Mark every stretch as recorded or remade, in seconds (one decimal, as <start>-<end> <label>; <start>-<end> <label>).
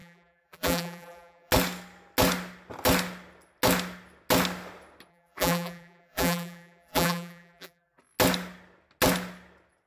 0.0-1.5 remade; 1.5-5.1 recorded; 5.1-8.0 remade; 8.0-9.9 recorded